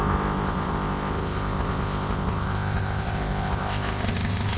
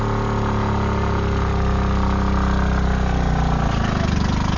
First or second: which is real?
second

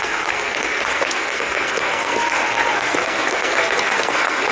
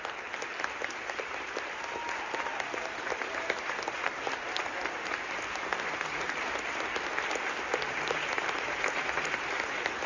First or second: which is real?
second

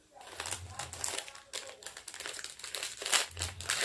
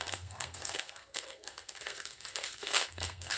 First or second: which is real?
first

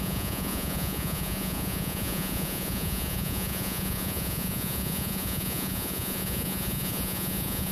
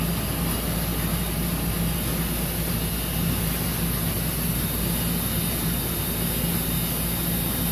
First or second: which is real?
second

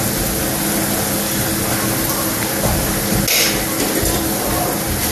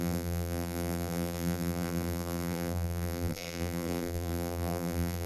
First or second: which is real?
first